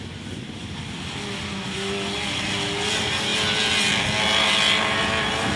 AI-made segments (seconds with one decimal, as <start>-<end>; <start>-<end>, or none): none